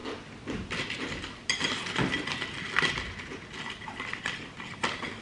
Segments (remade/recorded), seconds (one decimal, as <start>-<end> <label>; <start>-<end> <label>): 0.0-5.2 recorded